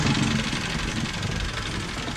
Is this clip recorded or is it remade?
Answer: recorded